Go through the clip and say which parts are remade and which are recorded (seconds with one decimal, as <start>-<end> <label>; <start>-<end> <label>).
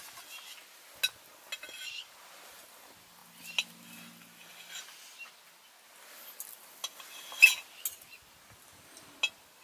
0.0-9.6 recorded